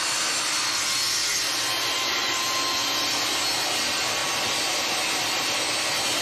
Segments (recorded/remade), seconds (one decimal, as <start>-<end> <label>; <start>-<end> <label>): 0.0-6.2 recorded